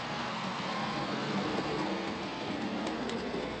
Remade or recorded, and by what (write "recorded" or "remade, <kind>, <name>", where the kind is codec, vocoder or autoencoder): remade, codec, SNAC